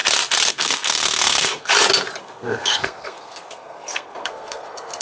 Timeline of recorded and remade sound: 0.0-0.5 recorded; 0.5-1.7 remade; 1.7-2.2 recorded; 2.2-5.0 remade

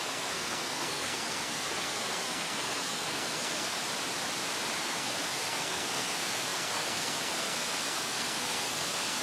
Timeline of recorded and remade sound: 0.0-3.8 remade; 3.8-4.8 recorded; 4.8-9.2 remade